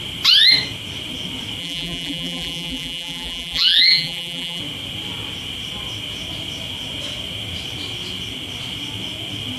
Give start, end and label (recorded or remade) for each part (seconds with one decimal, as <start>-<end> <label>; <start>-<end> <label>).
0.0-1.6 recorded; 1.6-4.6 remade; 4.6-9.6 recorded